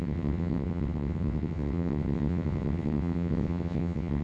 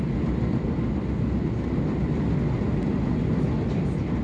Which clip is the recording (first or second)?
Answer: second